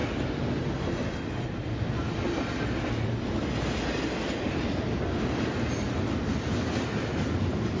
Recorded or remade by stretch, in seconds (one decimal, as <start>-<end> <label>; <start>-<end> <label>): 0.0-7.8 recorded